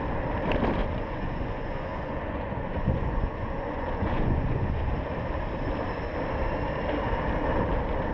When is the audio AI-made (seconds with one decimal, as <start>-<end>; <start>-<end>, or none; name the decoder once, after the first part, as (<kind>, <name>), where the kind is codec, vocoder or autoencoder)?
0.8-4.9 (vocoder, Vocos)